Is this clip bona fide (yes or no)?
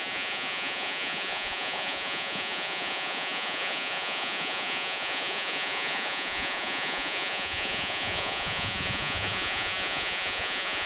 no